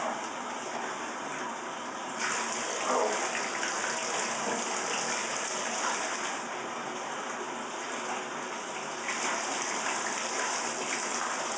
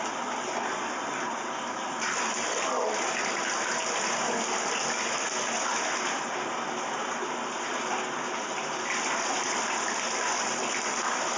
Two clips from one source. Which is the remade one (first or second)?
second